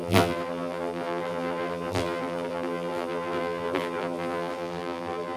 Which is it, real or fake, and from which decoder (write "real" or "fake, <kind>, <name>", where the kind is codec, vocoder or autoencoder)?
fake, vocoder, BigVGAN v2